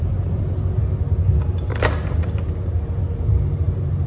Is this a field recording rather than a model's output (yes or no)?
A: yes